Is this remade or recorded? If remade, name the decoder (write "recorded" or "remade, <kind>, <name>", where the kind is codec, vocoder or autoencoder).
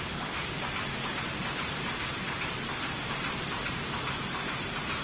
remade, vocoder, BigVGAN v2